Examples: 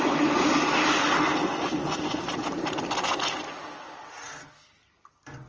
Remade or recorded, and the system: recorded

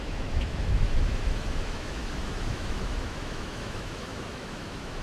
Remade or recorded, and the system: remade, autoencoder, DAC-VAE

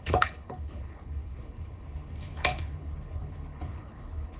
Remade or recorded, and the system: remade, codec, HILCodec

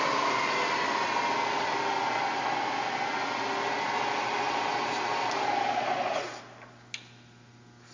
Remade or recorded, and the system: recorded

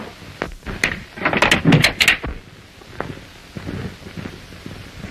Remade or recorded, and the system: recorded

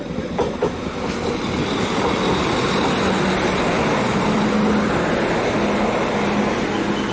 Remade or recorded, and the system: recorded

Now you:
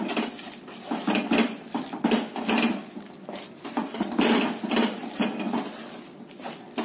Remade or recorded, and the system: recorded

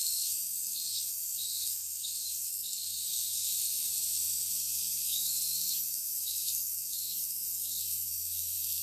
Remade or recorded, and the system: remade, codec, SNAC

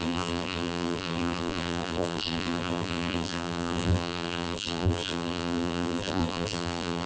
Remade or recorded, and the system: remade, vocoder, BigVGAN v2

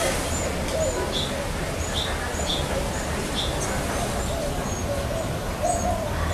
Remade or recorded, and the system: recorded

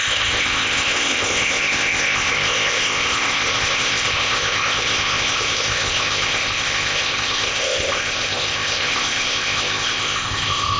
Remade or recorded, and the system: remade, codec, ZipCodec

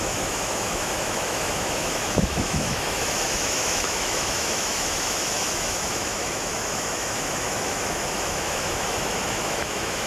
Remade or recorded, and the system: remade, autoencoder, DAC-VAE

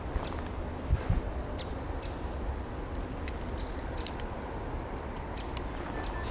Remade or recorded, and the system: recorded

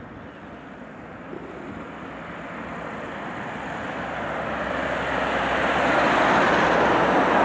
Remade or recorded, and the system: recorded